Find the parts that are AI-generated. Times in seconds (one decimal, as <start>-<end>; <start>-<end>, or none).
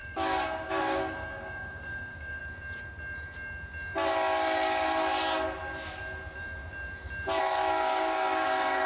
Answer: 0.0-2.4; 7.4-8.9